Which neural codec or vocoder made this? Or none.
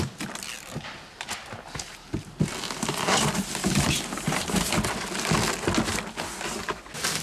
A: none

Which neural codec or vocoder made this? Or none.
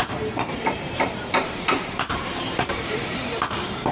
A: vocoder, BigVGAN v2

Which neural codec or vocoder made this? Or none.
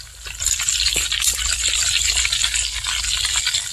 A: vocoder, BigVGAN v2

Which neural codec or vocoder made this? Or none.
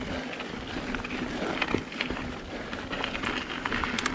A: none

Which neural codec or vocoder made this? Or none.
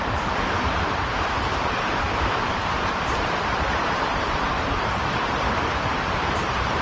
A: vocoder, BigVGAN v2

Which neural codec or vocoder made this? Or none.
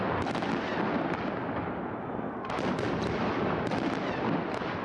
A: none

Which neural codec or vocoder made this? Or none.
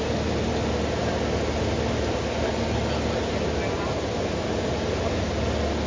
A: none